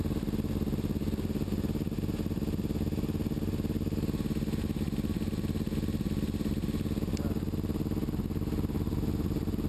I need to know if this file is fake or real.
real